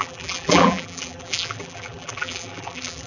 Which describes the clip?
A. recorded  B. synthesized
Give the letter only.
B